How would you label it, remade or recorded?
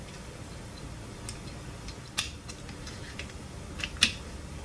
recorded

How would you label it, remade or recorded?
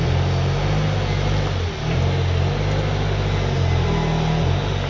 recorded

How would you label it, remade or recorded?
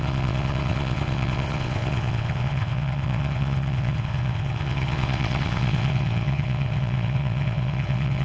remade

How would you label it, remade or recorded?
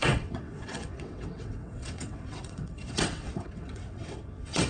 remade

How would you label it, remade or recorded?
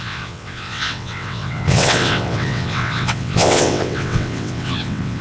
remade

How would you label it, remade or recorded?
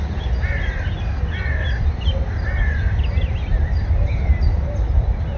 recorded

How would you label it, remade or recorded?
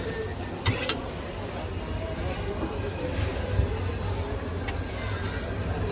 recorded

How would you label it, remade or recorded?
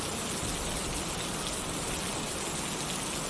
recorded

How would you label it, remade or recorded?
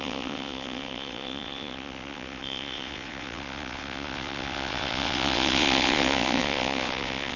remade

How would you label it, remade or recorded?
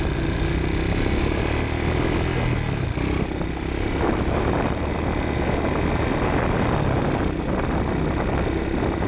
recorded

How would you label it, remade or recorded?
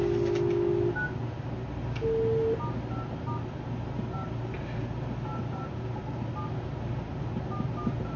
recorded